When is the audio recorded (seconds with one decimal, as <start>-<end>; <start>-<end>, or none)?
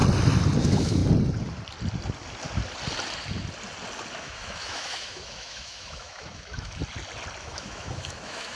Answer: 0.0-0.6; 1.0-4.2; 6.8-7.4